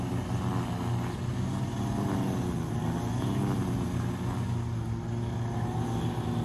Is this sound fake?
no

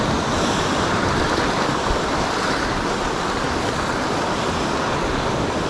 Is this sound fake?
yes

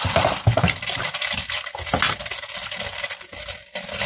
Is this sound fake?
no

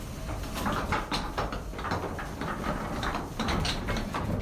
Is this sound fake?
yes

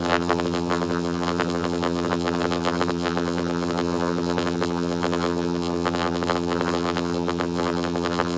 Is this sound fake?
yes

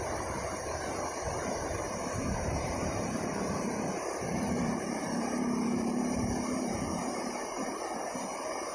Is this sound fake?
yes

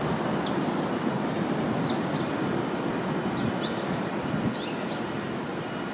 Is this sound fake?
yes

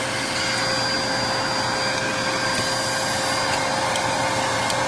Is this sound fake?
no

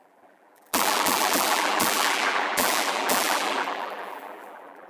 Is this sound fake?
yes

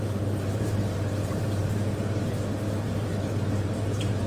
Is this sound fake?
yes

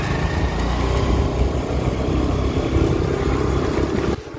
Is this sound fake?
no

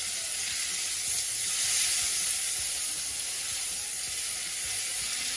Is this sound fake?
no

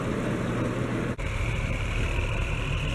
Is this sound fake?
yes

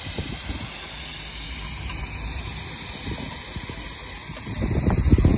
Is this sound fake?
no